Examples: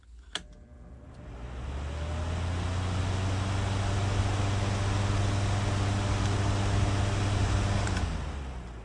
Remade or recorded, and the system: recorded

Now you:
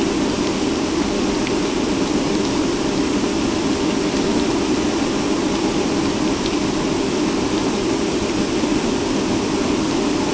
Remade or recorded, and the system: recorded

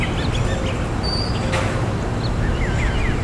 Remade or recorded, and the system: recorded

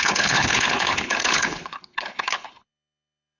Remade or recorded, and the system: remade, codec, HILCodec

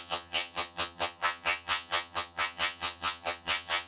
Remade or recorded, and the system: remade, vocoder, HiFi-GAN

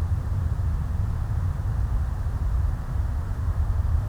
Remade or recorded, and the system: remade, vocoder, BigVGAN v2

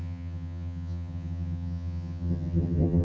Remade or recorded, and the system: remade, vocoder, HiFi-GAN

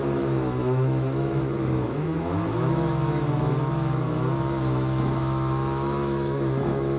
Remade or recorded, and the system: remade, autoencoder, DAC-VAE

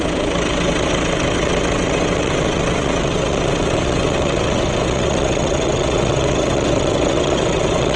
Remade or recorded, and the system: remade, vocoder, WaveNeXt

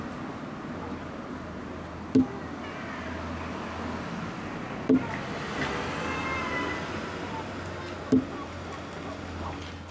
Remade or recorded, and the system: recorded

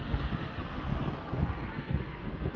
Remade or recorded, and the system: remade, codec, SNAC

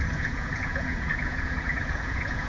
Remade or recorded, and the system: remade, vocoder, Vocos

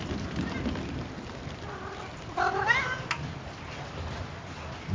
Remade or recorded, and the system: recorded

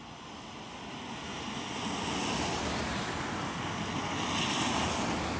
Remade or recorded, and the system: recorded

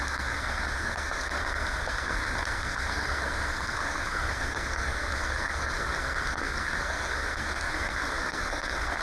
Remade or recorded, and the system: remade, codec, SNAC